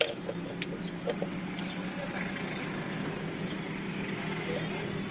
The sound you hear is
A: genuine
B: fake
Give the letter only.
A